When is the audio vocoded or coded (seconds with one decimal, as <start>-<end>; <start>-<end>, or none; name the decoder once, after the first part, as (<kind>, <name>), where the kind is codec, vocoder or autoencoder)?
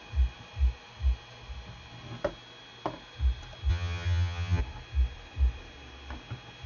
3.7-4.6 (vocoder, HiFi-GAN)